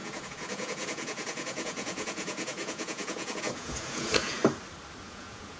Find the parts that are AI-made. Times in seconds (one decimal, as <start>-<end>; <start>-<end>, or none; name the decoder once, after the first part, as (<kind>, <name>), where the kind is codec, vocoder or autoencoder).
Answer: 0.0-4.4 (vocoder, Vocos); 5.0-5.6